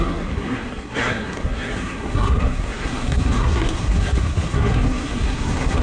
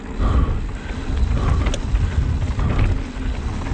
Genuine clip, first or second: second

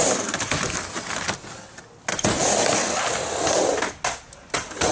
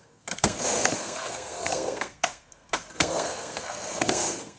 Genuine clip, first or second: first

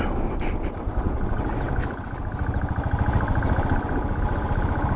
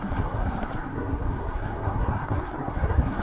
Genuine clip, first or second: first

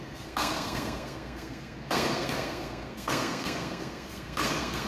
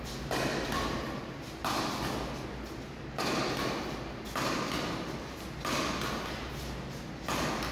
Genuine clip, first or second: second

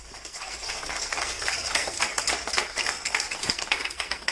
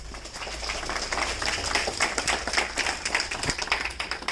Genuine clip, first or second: second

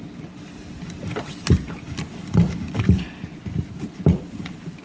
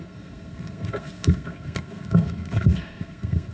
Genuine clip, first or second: first